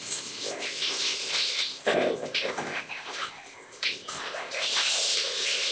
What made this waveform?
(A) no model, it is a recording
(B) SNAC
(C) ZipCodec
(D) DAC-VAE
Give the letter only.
C